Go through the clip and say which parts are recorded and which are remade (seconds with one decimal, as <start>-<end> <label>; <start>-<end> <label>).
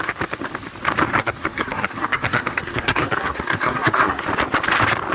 0.0-1.2 recorded; 1.2-4.2 remade; 4.2-5.1 recorded